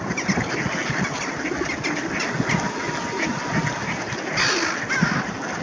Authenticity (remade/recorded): recorded